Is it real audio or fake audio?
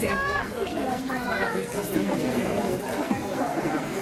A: fake